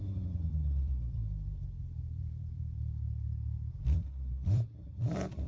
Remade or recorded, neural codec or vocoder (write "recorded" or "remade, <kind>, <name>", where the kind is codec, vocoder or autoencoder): remade, vocoder, BigVGAN v2